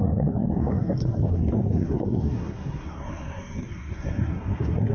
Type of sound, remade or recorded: remade